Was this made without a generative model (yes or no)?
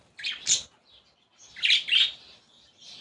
yes